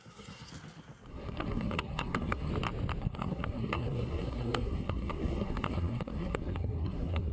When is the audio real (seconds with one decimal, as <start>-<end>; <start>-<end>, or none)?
0.5-1.1; 2.5-3.0